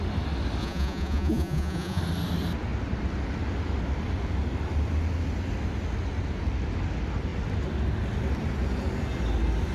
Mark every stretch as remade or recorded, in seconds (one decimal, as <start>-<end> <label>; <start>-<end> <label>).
0.0-0.6 recorded; 0.6-2.0 remade; 2.0-9.7 recorded